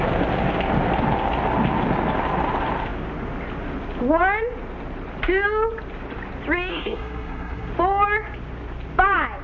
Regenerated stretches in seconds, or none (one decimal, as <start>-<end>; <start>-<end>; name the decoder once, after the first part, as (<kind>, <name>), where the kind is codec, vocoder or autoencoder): 6.7-7.7 (codec, SNAC)